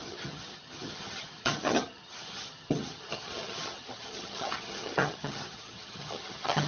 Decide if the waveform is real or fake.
fake